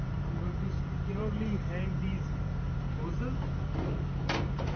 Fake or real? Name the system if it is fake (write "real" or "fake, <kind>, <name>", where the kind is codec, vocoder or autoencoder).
fake, vocoder, BigVGAN v2